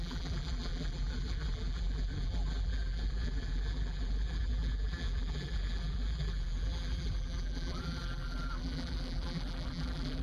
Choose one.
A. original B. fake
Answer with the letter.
B